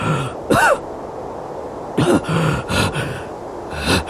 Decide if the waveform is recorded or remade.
recorded